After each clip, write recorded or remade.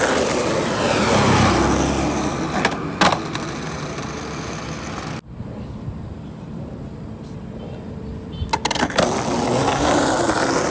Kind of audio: recorded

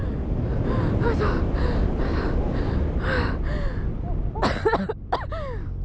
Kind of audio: recorded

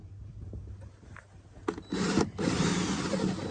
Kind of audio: recorded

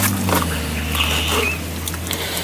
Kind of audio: recorded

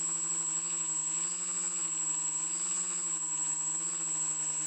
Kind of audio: recorded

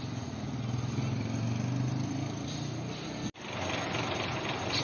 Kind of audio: recorded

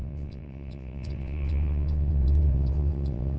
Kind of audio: remade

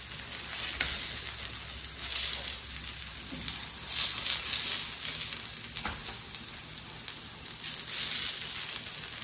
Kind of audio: recorded